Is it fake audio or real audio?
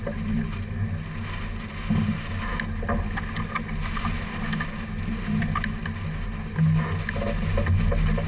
real